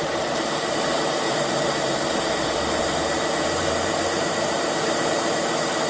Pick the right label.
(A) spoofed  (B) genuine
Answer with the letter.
A